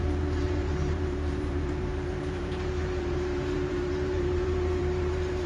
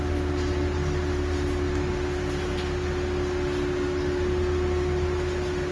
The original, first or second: second